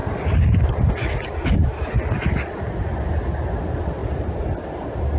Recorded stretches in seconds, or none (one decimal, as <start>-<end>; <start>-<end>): 0.0-4.0